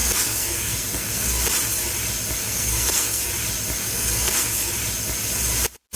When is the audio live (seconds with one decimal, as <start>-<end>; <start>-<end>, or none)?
1.4-2.4; 3.3-3.8; 4.7-6.0